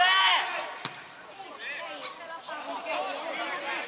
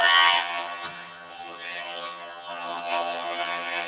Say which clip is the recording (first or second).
first